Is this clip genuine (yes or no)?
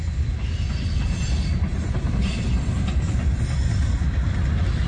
yes